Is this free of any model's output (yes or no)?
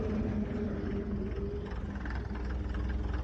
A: yes